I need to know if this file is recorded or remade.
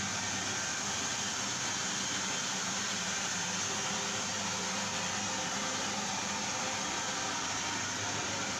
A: recorded